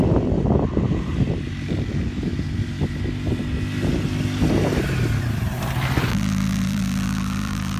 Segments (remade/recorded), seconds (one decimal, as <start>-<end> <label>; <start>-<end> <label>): 0.0-6.1 recorded; 6.1-7.8 remade